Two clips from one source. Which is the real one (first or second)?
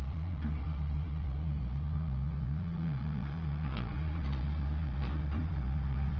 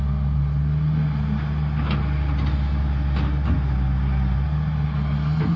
second